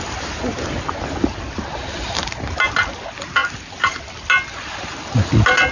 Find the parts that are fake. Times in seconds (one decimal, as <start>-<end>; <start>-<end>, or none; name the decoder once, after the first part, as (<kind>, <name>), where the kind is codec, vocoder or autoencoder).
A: none